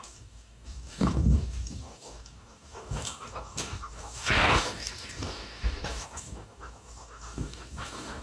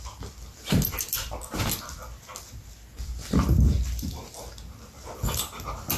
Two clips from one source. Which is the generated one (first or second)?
first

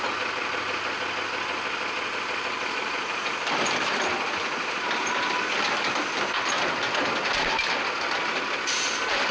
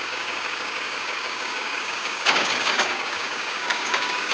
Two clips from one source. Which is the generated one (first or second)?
second